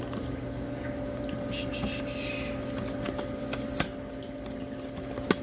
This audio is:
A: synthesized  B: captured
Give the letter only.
B